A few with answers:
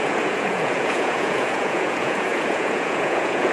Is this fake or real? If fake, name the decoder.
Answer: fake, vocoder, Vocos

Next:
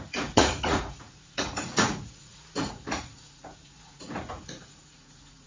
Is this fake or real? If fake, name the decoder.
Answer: fake, vocoder, Vocos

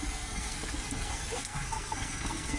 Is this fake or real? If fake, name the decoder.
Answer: fake, codec, SNAC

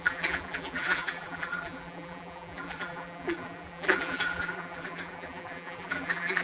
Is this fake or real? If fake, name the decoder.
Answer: fake, vocoder, BigVGAN v2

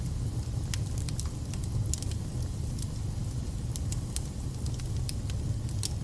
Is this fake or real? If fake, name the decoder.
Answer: real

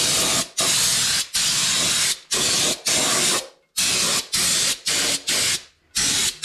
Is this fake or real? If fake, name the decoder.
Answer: real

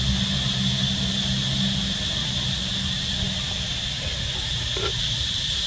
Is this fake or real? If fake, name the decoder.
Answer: real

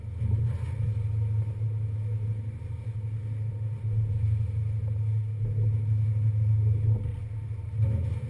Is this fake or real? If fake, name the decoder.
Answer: real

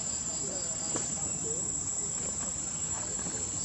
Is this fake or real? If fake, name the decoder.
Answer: fake, vocoder, BigVGAN v2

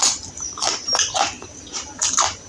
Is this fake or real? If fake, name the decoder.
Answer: fake, vocoder, BigVGAN v2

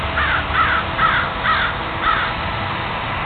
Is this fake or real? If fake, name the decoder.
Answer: real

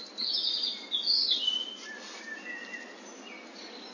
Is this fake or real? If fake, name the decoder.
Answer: real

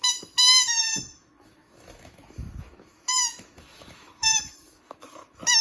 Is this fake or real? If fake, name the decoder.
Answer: fake, autoencoder, DAC-VAE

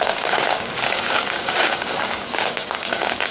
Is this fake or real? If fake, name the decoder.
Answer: fake, codec, DAC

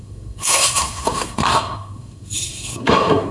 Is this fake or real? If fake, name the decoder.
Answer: fake, codec, SNAC